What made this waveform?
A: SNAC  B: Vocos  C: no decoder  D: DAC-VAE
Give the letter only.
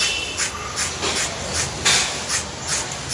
C